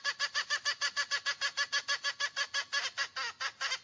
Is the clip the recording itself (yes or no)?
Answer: yes